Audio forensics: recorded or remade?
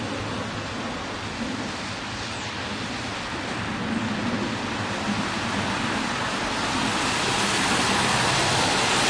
recorded